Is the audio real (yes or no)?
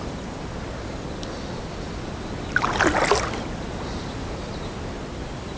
yes